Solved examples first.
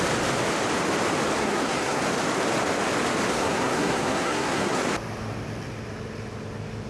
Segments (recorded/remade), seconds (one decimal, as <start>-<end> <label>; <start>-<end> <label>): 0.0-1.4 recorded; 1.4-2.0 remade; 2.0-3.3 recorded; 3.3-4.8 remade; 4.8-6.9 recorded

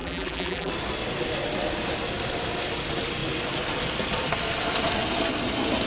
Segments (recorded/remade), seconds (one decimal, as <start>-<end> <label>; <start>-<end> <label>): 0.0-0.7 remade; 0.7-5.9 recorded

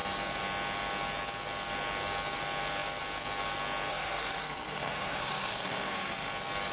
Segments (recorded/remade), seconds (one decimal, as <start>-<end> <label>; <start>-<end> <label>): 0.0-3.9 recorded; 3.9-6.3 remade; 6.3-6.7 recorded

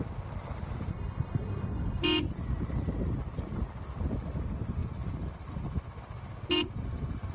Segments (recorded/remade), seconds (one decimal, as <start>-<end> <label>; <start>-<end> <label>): 0.0-0.9 recorded; 0.9-2.0 remade; 2.0-7.3 recorded

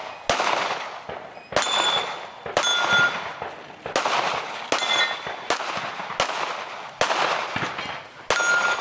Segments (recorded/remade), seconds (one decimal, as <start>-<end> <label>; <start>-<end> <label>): 0.0-8.8 recorded

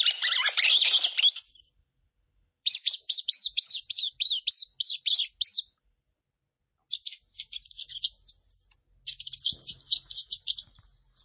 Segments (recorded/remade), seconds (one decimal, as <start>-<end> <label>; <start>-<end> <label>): 0.0-2.9 recorded; 2.9-4.1 remade; 4.1-11.2 recorded